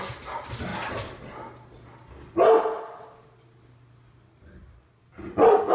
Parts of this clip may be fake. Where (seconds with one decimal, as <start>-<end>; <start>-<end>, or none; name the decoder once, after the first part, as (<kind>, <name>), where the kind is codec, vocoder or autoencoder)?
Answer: none